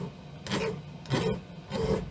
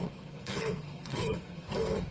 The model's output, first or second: second